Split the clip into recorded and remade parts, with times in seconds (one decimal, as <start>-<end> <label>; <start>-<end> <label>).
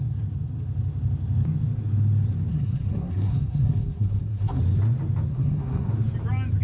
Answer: 0.0-2.5 recorded; 2.5-4.6 remade; 4.6-5.3 recorded; 5.3-5.9 remade; 5.9-6.6 recorded